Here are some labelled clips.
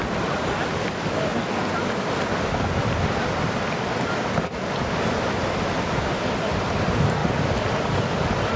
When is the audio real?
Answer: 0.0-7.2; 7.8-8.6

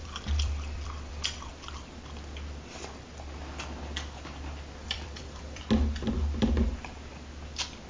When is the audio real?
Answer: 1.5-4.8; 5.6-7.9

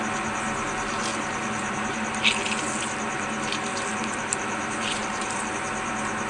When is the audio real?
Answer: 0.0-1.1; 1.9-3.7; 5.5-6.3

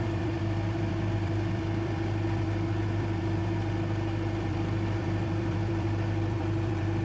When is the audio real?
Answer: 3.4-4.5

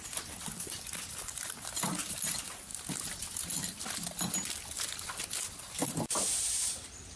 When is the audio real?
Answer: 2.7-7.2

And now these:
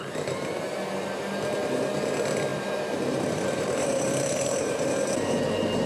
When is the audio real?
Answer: 0.0-2.5; 4.9-5.9